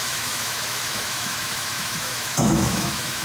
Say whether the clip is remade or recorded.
remade